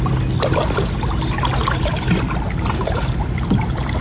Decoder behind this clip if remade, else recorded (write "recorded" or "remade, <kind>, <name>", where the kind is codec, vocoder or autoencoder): recorded